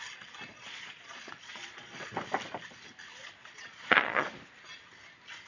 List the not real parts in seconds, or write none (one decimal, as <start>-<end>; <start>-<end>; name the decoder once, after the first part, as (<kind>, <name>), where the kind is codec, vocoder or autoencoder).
0.5-2.1 (vocoder, Vocos); 3.2-4.3